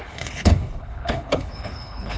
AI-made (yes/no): yes